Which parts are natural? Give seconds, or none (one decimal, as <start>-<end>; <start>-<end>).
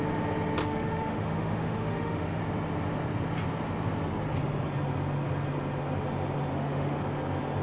0.0-0.6; 2.4-6.5; 7.0-7.6